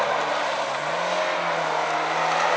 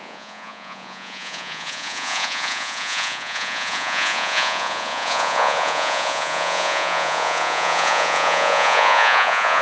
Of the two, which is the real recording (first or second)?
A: first